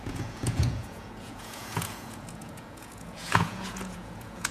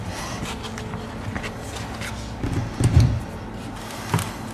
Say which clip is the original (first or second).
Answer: second